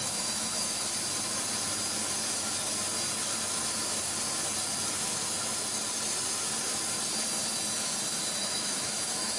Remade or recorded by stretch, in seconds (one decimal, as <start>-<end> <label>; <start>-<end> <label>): 0.0-0.9 remade; 0.9-8.4 recorded; 8.4-9.4 remade